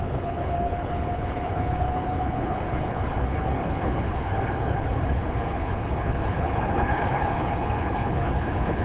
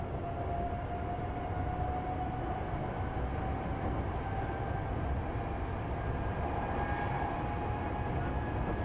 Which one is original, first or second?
second